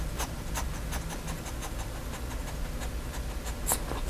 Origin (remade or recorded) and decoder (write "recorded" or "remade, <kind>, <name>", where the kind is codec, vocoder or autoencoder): recorded